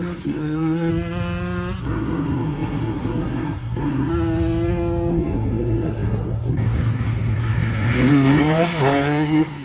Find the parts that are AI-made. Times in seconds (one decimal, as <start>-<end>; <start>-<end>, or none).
0.0-0.9; 1.8-4.1; 5.1-9.6